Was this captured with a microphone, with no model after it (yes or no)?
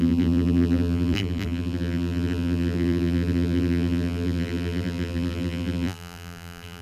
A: no